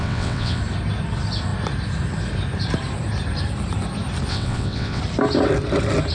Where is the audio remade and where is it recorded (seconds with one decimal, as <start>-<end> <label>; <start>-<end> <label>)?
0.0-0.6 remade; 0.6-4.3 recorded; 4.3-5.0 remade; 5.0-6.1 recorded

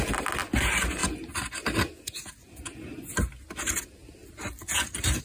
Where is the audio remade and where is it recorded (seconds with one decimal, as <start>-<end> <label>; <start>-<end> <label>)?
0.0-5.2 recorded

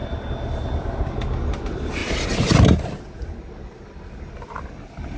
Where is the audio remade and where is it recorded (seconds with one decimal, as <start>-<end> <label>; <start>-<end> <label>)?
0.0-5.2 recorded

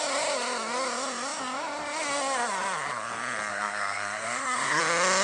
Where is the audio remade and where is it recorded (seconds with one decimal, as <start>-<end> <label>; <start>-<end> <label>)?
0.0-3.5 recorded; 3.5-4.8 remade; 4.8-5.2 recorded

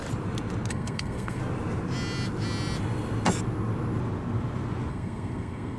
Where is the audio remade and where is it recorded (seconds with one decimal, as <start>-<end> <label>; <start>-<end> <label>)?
0.0-0.7 recorded; 0.7-1.4 remade; 1.4-4.9 recorded; 4.9-5.8 remade

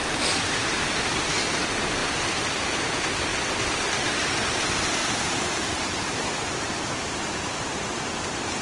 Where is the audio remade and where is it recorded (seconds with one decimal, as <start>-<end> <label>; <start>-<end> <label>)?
0.0-1.2 remade; 1.2-5.0 recorded; 5.0-6.8 remade; 6.8-8.6 recorded

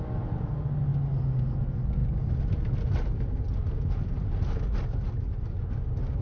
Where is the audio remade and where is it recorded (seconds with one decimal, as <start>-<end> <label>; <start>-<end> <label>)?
0.0-6.2 recorded